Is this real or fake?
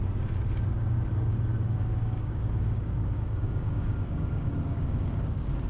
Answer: fake